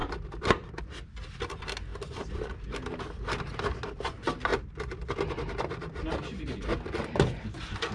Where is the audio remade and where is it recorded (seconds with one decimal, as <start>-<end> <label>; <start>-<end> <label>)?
0.0-0.8 remade; 0.8-1.9 recorded; 1.9-2.6 remade; 2.6-7.9 recorded